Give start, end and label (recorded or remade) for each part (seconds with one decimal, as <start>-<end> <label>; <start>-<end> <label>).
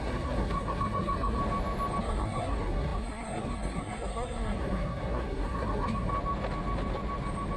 0.0-1.4 remade; 1.4-2.0 recorded; 2.0-6.1 remade; 6.1-7.6 recorded